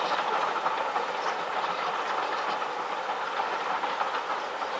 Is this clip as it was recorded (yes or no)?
yes